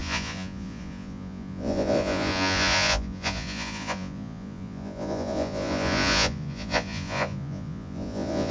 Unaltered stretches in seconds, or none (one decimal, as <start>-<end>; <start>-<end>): none